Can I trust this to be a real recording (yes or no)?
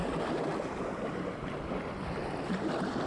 yes